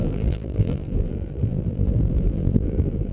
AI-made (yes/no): yes